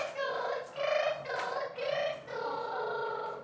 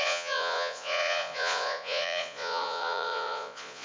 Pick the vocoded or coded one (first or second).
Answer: second